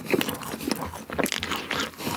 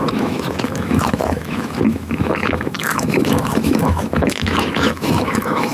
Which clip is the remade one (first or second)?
second